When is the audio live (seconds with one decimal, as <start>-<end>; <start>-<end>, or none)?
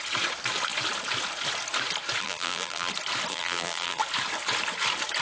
0.0-2.2; 2.9-3.3; 4.0-5.2